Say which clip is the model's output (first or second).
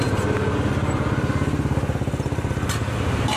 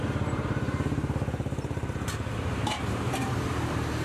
second